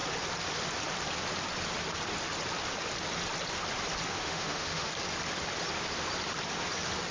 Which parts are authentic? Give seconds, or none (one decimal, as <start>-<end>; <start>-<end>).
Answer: 0.0-4.2; 4.9-7.1